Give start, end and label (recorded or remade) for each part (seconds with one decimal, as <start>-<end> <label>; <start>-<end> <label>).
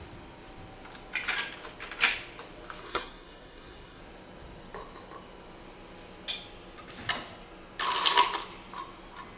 0.0-2.8 recorded; 2.8-4.0 remade; 4.0-9.4 recorded